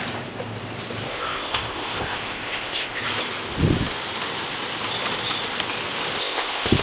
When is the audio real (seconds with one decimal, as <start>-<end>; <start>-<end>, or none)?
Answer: 0.0-1.1; 3.0-6.2